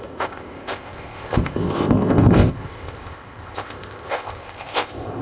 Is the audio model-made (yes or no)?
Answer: yes